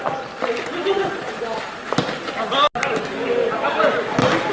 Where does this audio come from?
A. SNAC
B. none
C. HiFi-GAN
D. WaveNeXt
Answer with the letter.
B